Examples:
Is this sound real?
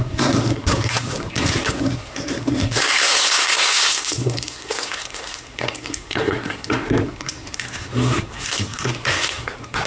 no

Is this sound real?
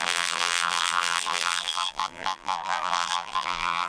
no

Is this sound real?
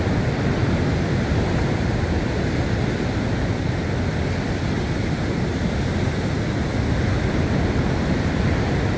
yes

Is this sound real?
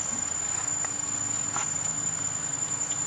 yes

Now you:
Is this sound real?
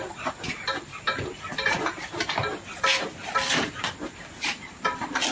yes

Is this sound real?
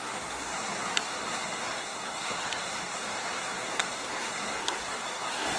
no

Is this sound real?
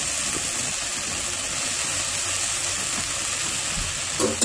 yes